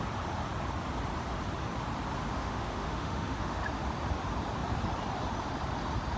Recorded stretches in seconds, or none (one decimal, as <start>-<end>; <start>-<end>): 0.0-2.3; 3.6-6.2